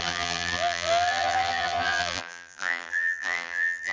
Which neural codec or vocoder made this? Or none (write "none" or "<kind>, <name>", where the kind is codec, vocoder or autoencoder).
vocoder, BigVGAN v2